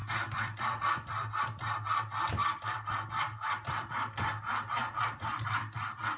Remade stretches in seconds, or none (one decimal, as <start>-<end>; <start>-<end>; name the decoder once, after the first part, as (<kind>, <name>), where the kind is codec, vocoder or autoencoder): none